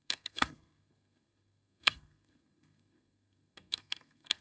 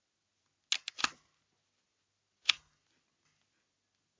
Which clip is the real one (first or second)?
second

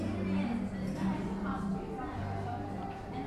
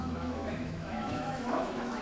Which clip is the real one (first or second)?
first